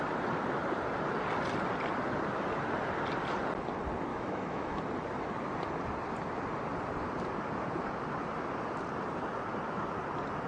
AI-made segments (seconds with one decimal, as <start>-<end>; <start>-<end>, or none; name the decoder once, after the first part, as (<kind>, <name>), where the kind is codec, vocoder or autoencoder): 4.1-4.8 (autoencoder, DAC-VAE)